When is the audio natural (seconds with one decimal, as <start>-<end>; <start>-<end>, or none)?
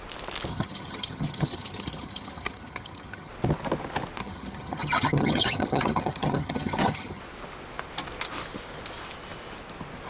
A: 0.0-0.5; 3.3-4.2; 7.2-10.1